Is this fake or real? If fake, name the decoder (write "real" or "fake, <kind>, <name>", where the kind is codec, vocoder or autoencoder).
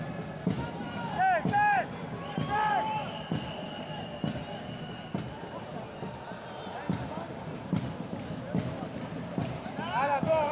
real